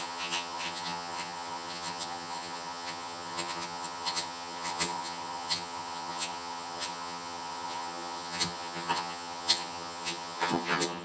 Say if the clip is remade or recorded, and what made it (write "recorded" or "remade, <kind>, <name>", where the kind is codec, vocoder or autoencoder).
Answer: remade, vocoder, HiFi-GAN